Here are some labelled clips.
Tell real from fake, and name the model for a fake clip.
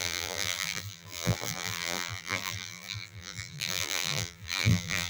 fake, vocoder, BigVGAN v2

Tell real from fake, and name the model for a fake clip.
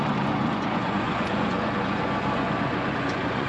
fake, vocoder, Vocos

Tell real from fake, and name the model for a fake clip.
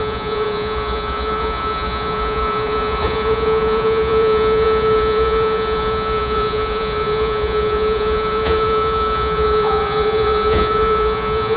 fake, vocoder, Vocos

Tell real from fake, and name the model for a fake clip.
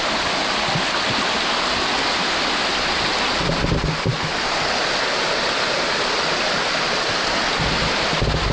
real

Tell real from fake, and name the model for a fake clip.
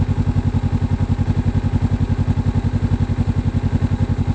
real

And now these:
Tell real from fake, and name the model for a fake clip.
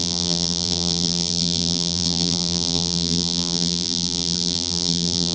fake, vocoder, BigVGAN v2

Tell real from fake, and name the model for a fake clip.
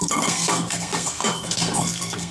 fake, codec, SNAC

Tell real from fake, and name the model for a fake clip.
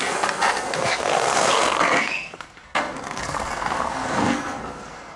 fake, codec, SNAC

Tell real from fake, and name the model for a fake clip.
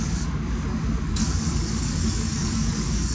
fake, codec, DAC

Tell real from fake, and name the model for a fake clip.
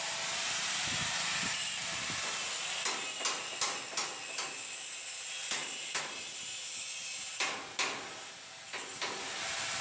real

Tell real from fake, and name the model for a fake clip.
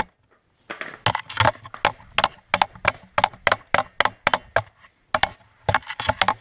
real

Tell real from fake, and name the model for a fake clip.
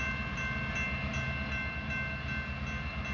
real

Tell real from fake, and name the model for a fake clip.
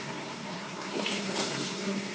fake, codec, SNAC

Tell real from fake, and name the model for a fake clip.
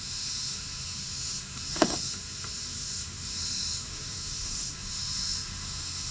fake, autoencoder, DAC-VAE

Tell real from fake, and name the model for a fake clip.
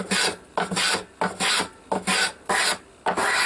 real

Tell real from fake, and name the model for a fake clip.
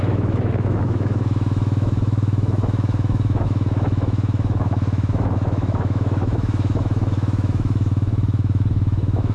fake, autoencoder, DAC-VAE